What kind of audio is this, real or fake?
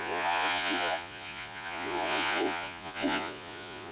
fake